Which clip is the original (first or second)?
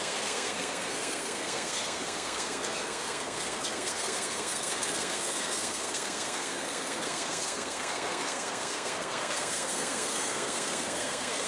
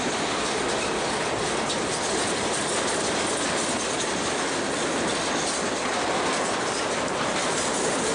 second